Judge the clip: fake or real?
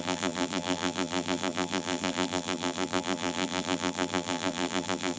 fake